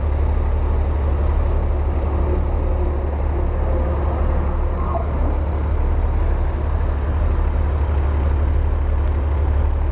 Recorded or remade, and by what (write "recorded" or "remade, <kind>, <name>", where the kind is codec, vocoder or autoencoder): recorded